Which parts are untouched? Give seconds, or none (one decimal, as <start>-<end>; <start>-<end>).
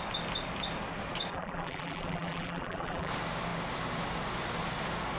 0.0-1.3; 3.1-5.2